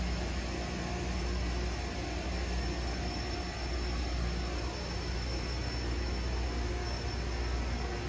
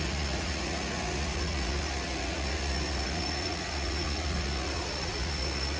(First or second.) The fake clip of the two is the second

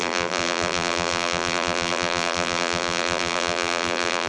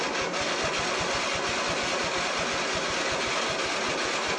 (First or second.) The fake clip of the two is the first